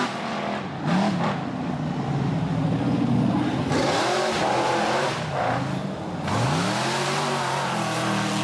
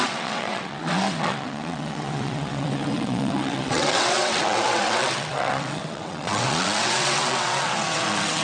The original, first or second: first